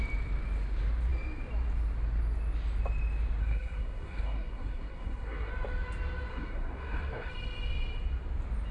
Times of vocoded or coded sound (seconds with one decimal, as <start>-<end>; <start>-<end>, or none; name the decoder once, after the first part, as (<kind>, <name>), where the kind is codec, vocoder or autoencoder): 3.4-5.5 (codec, SNAC); 6.3-7.3